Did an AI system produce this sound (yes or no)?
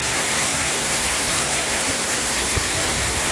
yes